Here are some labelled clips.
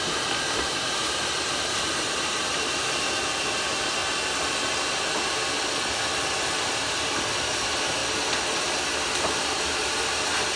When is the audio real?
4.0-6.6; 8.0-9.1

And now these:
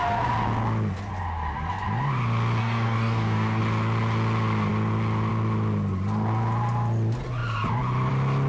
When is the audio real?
0.0-2.6; 3.6-8.5

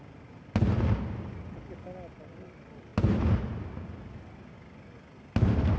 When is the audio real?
0.0-5.8

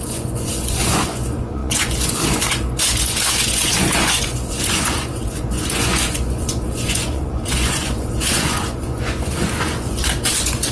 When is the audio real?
none

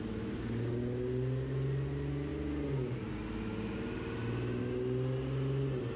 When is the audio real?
0.0-6.0

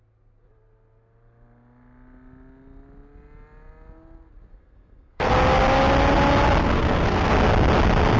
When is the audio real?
0.0-4.5; 5.3-6.6; 7.3-8.2

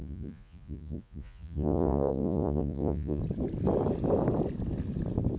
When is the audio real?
3.2-5.4

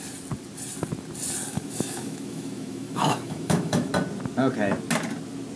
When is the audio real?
0.0-1.5; 3.9-5.6